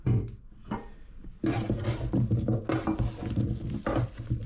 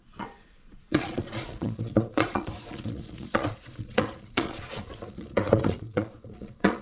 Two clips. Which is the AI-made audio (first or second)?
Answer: second